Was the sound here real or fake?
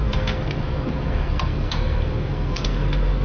fake